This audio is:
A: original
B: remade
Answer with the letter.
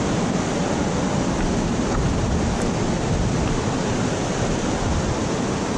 A